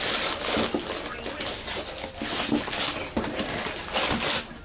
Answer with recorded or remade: recorded